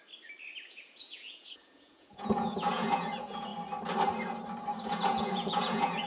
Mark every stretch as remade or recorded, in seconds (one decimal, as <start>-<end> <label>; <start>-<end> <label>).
0.0-0.7 recorded; 0.7-3.5 remade; 3.5-4.8 recorded; 4.8-6.1 remade

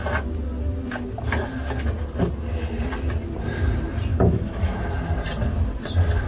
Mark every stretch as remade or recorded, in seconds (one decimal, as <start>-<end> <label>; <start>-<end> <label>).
0.0-4.1 recorded; 4.1-5.0 remade; 5.0-6.3 recorded

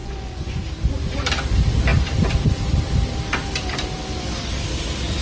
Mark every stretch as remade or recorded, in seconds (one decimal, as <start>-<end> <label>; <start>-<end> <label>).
0.0-0.6 remade; 0.6-5.2 recorded